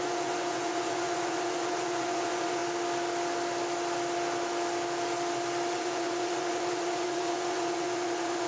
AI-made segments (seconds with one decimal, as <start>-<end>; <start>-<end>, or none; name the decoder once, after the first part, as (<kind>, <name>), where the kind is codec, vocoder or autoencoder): 0.0-2.6 (vocoder, Vocos); 5.7-8.5